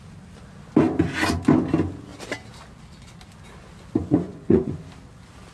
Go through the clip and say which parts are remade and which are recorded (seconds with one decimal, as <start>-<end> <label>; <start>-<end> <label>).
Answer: 0.0-4.0 recorded; 4.0-4.8 remade; 4.8-5.5 recorded